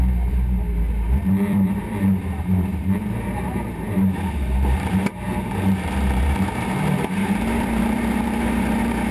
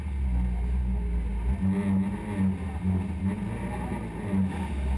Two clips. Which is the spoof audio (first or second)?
first